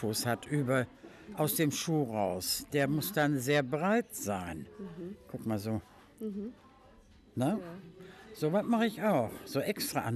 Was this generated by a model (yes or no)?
no